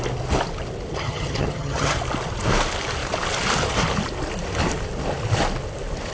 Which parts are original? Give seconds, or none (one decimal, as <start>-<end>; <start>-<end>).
0.0-0.9; 2.0-6.1